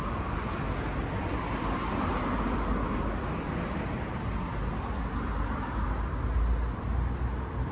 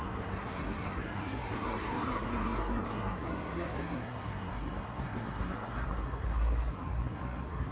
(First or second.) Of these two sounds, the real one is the first